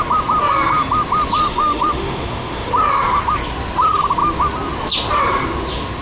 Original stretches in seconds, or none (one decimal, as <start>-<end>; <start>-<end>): 0.0-1.4; 2.7-6.0